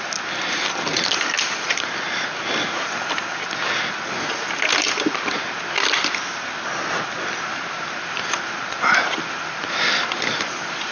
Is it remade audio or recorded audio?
recorded